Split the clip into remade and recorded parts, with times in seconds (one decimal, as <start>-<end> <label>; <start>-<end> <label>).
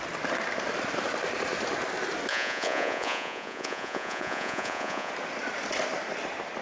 0.0-2.3 recorded; 2.3-5.1 remade; 5.1-6.6 recorded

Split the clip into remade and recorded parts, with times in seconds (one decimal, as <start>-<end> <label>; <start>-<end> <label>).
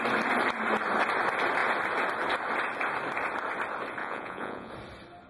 0.0-4.0 recorded; 4.0-4.7 remade; 4.7-5.3 recorded